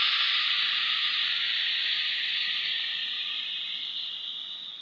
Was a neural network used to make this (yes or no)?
no